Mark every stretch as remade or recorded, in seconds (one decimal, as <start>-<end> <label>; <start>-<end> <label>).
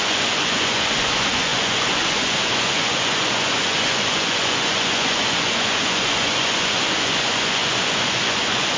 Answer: 0.0-8.8 remade